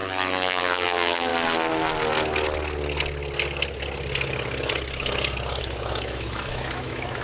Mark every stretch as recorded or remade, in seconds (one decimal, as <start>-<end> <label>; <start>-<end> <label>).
0.0-1.3 remade; 1.3-5.6 recorded; 5.6-7.2 remade